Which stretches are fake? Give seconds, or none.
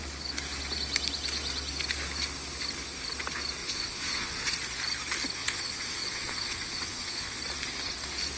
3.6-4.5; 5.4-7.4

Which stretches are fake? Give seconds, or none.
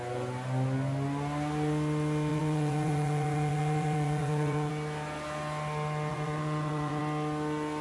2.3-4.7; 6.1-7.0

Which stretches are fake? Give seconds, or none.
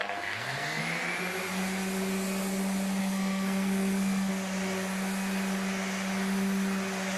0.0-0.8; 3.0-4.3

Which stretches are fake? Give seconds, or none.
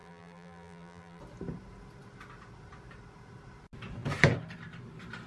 0.0-1.2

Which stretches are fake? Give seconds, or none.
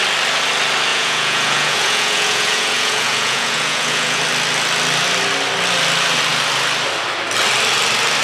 0.9-4.2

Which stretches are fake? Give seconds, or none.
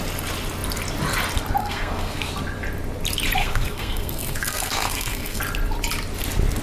1.6-2.2; 3.4-5.4